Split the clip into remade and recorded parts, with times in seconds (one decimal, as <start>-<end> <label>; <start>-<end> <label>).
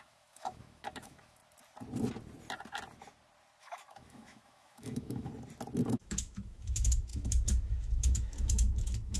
0.0-1.4 remade; 1.4-3.6 recorded; 3.6-5.3 remade; 5.3-5.9 recorded; 5.9-9.2 remade